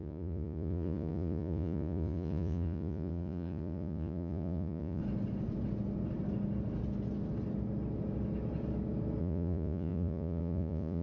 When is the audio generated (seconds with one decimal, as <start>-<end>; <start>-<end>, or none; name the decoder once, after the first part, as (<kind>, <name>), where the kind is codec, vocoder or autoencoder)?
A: 0.0-5.0 (vocoder, Vocos); 9.2-11.0